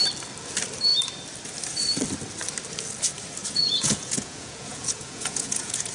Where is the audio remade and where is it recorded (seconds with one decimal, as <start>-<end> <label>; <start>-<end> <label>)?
0.0-3.4 recorded; 3.4-5.9 remade

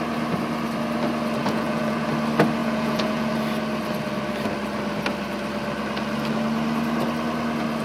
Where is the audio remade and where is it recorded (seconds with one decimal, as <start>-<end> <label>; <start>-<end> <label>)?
0.0-1.4 recorded; 1.4-2.1 remade; 2.1-2.6 recorded; 2.6-3.3 remade; 3.3-7.8 recorded

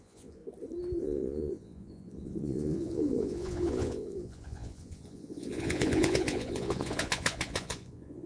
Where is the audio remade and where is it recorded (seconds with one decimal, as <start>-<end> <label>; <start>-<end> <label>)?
0.0-0.4 remade; 0.4-1.0 recorded; 1.0-8.3 remade

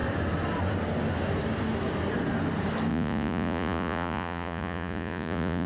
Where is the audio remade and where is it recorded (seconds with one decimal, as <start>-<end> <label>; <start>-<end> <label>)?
0.0-2.9 recorded; 2.9-5.7 remade

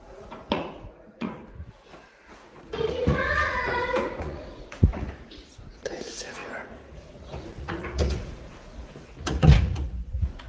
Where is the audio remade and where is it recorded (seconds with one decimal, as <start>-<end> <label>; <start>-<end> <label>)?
0.0-10.5 remade

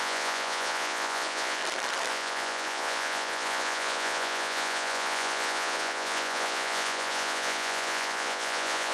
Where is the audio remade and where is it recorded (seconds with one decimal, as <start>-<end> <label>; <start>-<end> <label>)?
0.0-1.6 remade; 1.6-2.1 recorded; 2.1-8.9 remade

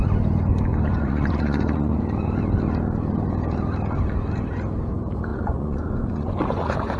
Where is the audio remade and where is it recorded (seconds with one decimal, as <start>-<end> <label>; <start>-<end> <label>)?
0.0-0.7 recorded; 0.7-2.0 remade; 2.0-5.3 recorded; 5.3-7.0 remade

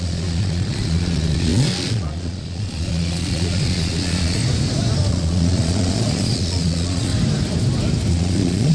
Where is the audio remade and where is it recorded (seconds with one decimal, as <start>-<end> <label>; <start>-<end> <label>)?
0.0-4.4 remade; 4.4-5.1 recorded; 5.1-7.1 remade; 7.1-8.1 recorded; 8.1-8.7 remade